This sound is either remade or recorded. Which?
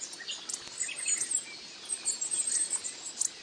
recorded